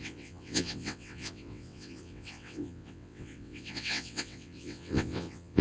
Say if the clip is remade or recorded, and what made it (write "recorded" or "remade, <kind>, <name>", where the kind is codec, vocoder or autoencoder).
remade, vocoder, WaveNeXt